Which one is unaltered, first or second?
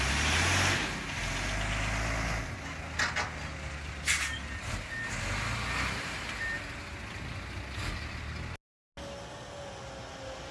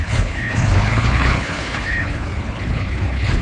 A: first